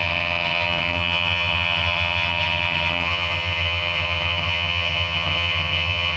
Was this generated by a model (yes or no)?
yes